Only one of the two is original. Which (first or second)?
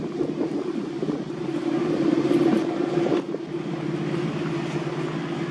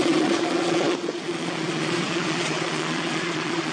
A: first